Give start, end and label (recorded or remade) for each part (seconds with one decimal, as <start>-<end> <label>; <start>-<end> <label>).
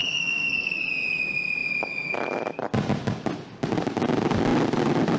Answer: 0.0-0.8 remade; 0.8-5.2 recorded